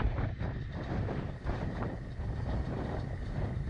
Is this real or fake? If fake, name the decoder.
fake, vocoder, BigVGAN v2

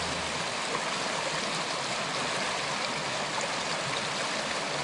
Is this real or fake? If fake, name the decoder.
real